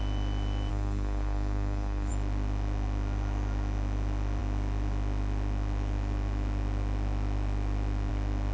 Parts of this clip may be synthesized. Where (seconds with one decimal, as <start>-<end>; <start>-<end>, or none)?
0.7-2.1